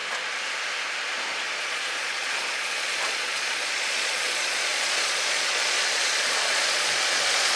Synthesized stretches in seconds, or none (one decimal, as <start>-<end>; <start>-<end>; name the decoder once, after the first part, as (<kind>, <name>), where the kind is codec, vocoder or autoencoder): 1.6-7.6 (vocoder, Vocos)